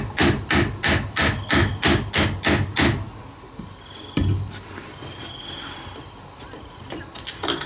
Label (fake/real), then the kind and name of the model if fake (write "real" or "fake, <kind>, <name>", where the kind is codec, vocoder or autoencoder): real